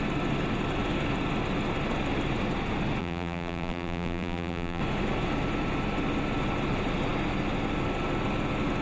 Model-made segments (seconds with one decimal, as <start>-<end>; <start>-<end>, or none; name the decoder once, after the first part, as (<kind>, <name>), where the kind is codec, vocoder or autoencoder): 3.0-4.8 (vocoder, BigVGAN v2)